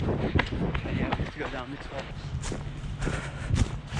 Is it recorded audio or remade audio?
recorded